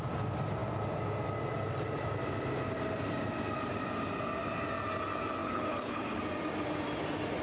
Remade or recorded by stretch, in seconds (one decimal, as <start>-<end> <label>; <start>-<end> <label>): 0.0-5.4 recorded; 5.4-6.2 remade; 6.2-7.4 recorded